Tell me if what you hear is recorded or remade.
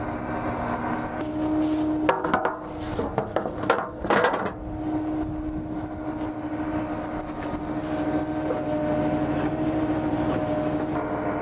recorded